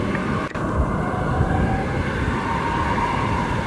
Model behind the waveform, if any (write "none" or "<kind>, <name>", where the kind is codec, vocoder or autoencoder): none